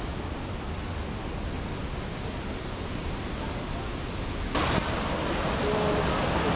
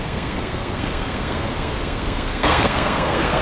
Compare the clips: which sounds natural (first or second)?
first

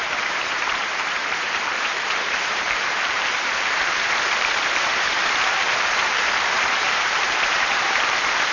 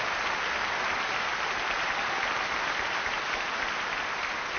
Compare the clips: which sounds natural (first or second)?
second